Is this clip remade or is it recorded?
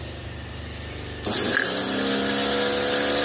recorded